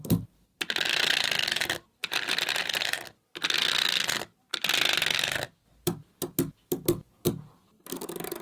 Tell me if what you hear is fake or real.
real